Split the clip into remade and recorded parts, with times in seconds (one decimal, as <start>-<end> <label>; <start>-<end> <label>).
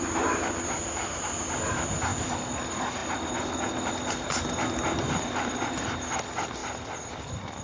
0.0-2.1 remade; 2.1-2.6 recorded; 2.6-6.6 remade; 6.6-7.1 recorded; 7.1-7.6 remade